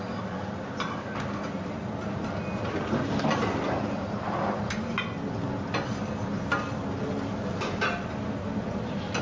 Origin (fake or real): real